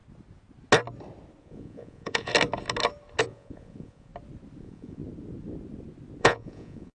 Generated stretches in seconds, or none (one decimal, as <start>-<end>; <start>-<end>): 1.4-2.3; 3.2-4.1; 4.6-5.0; 6.2-7.0